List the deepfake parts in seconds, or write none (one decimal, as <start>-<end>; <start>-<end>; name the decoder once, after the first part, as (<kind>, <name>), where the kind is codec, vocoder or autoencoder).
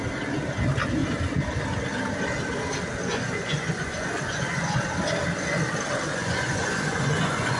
3.0-4.6 (vocoder, Vocos); 6.1-7.6